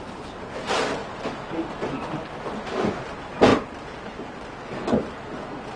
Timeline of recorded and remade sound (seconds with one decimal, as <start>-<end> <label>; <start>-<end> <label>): 0.0-5.8 recorded